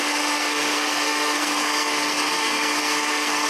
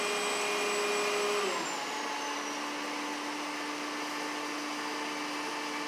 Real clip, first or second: second